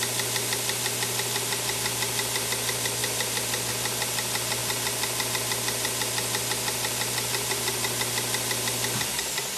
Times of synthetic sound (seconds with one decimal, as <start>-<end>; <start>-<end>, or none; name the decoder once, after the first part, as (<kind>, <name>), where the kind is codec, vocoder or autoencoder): none